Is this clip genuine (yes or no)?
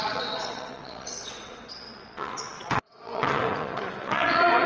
no